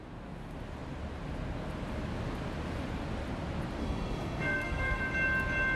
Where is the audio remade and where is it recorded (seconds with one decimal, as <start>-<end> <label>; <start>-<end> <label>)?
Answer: 0.0-3.8 recorded; 3.8-5.0 remade; 5.0-5.8 recorded